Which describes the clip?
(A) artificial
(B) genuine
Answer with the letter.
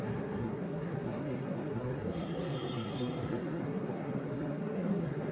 A